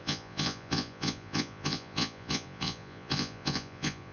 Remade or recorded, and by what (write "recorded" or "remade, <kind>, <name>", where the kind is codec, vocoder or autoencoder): remade, vocoder, Vocos